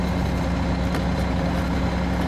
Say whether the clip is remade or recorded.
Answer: recorded